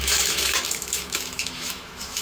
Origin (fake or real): fake